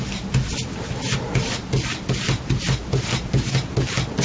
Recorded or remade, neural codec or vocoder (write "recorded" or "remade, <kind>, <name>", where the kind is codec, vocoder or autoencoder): recorded